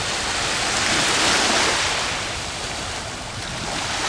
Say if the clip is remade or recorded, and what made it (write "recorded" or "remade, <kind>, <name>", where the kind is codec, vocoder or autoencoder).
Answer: recorded